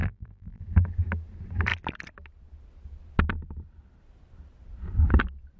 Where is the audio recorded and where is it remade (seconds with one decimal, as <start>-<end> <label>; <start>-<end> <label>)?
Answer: 0.0-0.6 remade; 0.6-5.6 recorded